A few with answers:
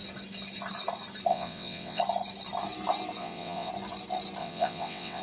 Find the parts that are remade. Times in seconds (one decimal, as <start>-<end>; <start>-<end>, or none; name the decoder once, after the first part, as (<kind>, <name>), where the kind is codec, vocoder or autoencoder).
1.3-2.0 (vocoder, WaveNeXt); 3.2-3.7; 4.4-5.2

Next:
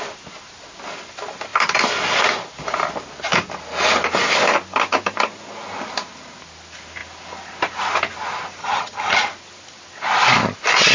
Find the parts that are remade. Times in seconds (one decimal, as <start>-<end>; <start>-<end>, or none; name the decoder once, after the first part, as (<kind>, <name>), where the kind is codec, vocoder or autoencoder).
8.6-9.3 (vocoder, HiFi-GAN)

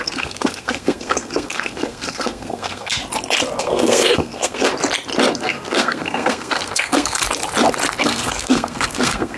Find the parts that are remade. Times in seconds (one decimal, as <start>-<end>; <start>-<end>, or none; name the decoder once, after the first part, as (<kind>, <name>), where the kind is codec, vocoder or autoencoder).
0.0-3.0 (codec, SNAC); 3.6-4.7; 5.3-7.2; 8.0-9.4